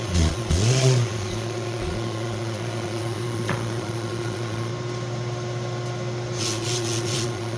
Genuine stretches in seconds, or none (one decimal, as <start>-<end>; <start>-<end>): 4.7-6.4